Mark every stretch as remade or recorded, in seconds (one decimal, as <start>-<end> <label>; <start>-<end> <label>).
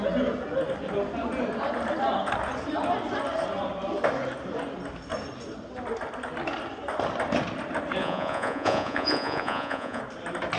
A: 0.0-8.0 recorded; 8.0-10.0 remade; 10.0-10.6 recorded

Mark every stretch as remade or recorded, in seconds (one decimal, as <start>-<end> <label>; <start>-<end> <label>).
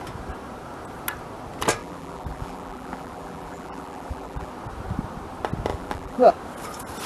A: 0.0-1.8 recorded; 1.8-4.5 remade; 4.5-5.7 recorded; 5.7-6.3 remade; 6.3-7.1 recorded